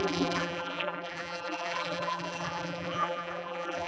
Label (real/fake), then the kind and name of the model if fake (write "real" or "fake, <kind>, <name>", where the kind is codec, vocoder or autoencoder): fake, vocoder, BigVGAN v2